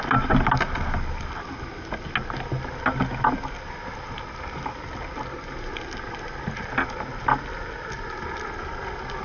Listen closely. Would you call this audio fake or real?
real